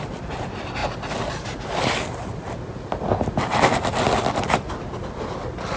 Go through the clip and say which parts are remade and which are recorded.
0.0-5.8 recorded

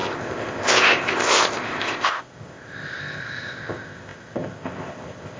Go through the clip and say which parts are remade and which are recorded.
0.0-5.4 remade

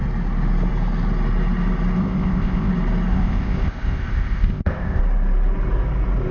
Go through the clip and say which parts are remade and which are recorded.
0.0-2.0 recorded; 2.0-2.7 remade; 2.7-3.1 recorded; 3.1-5.0 remade; 5.0-6.3 recorded

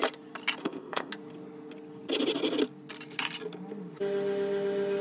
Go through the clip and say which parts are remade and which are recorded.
0.0-0.6 recorded; 0.6-1.1 remade; 1.1-5.0 recorded

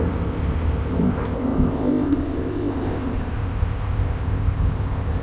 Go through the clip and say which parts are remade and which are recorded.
0.0-5.2 remade

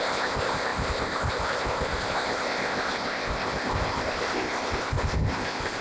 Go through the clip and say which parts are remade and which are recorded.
0.0-5.8 remade

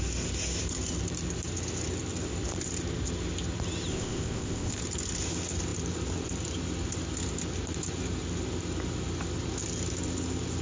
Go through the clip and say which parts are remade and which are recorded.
0.0-3.9 recorded; 3.9-4.8 remade; 4.8-10.6 recorded